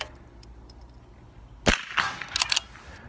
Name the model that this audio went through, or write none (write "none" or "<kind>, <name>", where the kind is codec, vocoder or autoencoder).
none